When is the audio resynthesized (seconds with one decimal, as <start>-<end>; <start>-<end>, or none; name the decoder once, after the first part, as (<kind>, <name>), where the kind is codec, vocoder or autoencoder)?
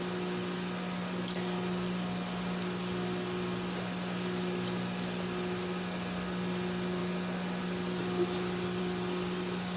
none